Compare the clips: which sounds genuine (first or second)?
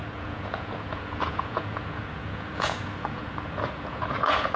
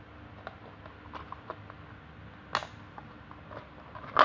second